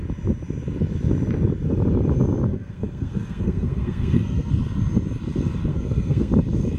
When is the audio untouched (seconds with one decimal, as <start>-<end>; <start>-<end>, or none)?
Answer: 0.0-2.5; 4.5-5.7; 6.3-6.8